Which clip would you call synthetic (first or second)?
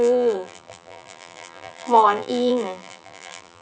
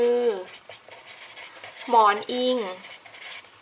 first